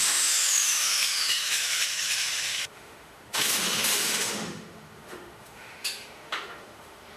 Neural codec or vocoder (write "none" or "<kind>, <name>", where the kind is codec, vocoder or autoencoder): autoencoder, DAC-VAE